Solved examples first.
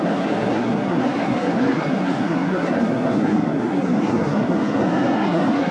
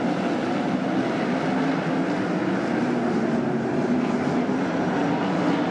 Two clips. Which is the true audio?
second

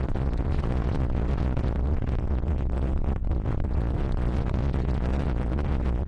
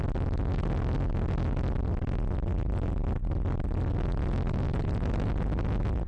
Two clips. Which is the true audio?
second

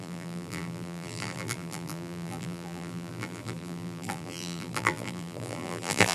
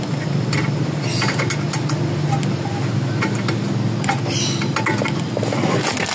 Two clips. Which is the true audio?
second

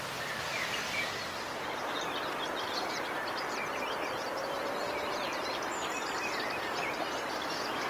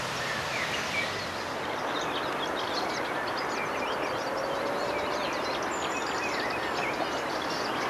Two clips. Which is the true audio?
second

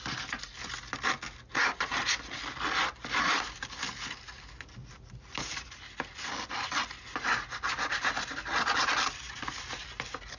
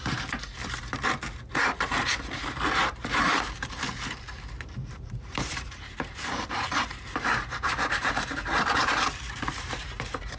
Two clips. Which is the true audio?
first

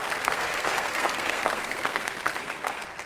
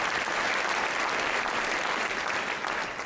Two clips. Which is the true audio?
second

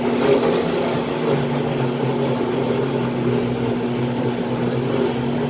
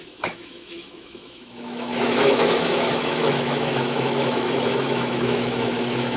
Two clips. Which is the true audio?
first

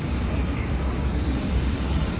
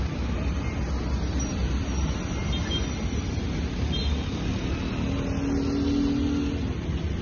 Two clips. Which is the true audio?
second